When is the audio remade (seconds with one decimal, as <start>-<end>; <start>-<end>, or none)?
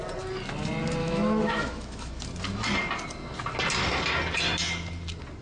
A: 1.0-2.2